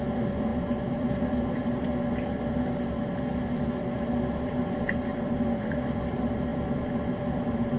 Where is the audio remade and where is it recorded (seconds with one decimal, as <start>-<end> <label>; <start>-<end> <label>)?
0.0-1.9 remade; 1.9-4.0 recorded; 4.0-7.8 remade